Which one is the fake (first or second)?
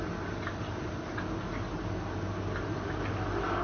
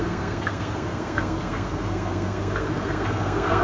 second